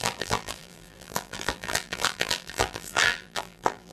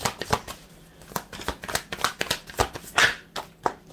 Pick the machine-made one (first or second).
first